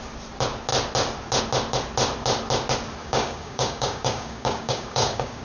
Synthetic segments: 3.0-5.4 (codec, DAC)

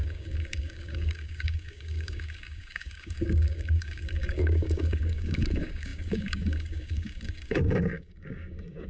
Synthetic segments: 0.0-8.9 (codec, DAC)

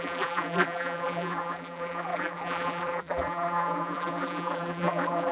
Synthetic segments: 0.0-5.3 (vocoder, BigVGAN v2)